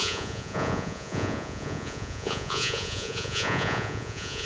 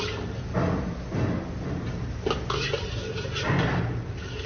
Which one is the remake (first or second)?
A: first